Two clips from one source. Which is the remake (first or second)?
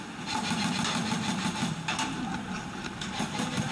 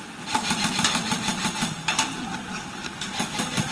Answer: second